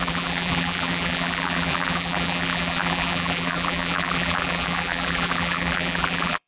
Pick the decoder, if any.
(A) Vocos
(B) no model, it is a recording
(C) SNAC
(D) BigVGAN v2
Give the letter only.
D